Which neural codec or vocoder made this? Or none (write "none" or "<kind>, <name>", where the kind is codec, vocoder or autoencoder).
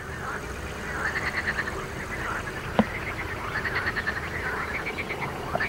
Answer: none